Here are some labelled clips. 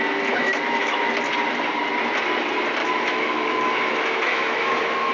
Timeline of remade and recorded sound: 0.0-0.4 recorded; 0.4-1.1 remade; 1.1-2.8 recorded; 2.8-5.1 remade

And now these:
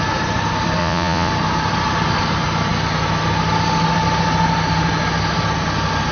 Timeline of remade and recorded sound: 0.0-0.8 recorded; 0.8-1.3 remade; 1.3-6.1 recorded

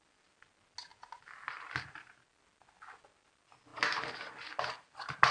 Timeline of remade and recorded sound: 0.0-5.3 recorded

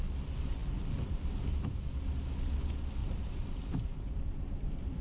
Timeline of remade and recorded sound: 0.0-0.6 recorded; 0.6-1.8 remade; 1.8-3.0 recorded; 3.0-5.0 remade

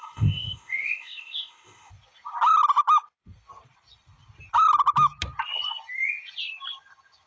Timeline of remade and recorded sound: 0.0-1.9 remade; 1.9-7.3 recorded